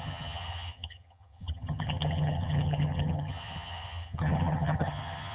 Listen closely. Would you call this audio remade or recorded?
remade